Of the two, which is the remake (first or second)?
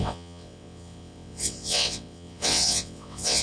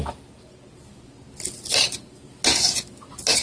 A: first